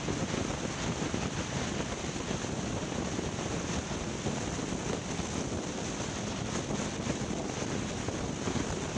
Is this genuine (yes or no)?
yes